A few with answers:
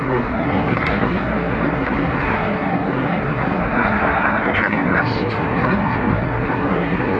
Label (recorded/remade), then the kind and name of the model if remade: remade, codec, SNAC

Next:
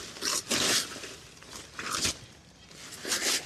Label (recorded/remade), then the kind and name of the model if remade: recorded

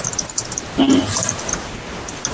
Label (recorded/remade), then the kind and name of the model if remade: recorded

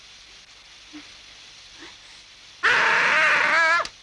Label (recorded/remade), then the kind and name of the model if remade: recorded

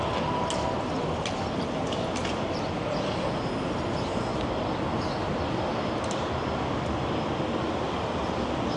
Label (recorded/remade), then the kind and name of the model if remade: recorded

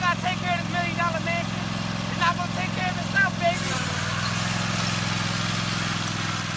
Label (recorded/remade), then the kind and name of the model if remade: recorded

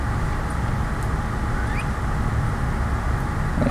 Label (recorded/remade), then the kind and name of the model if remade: recorded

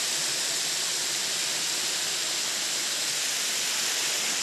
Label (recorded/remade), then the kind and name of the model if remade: recorded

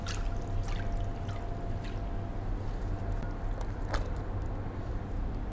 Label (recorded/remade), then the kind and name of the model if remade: recorded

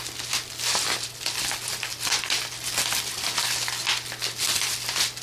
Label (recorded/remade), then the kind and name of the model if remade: recorded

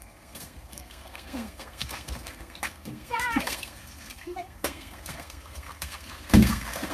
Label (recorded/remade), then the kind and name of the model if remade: remade, codec, SNAC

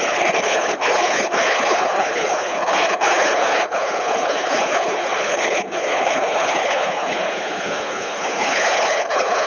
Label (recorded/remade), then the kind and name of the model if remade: remade, codec, HILCodec